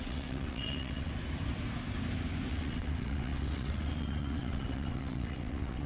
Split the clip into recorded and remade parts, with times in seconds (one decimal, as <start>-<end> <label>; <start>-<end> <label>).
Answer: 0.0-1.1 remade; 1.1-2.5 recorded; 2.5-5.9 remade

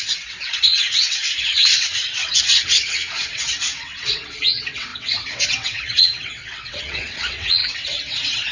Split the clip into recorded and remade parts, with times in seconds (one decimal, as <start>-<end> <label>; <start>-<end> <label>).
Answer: 0.0-8.5 remade

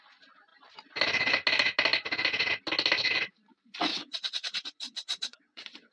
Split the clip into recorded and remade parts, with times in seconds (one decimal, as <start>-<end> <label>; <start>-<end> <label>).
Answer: 0.0-3.9 recorded; 3.9-5.9 remade

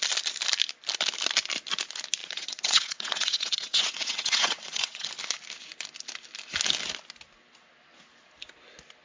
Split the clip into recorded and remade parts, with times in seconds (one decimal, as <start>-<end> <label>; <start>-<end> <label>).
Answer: 0.0-2.2 recorded; 2.2-5.1 remade; 5.1-9.0 recorded

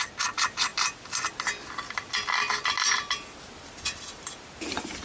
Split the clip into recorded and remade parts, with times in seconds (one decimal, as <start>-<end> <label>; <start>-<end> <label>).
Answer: 0.0-5.0 recorded

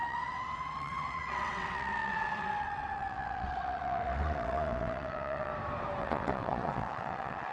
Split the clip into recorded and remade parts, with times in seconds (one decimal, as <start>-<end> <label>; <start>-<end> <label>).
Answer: 0.0-5.5 remade; 5.5-6.0 recorded; 6.0-7.5 remade